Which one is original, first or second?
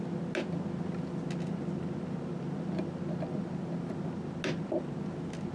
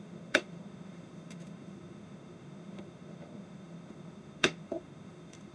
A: first